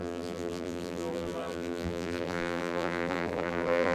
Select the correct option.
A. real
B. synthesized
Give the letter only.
B